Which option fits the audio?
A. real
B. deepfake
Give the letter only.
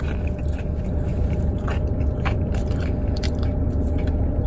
B